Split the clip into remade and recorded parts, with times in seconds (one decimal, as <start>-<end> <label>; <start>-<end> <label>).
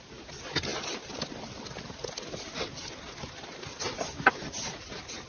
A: 0.0-5.3 recorded